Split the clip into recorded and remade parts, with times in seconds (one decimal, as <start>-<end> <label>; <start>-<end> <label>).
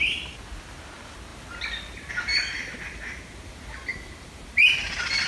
0.0-5.3 recorded